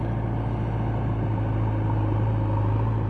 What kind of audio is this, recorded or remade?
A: recorded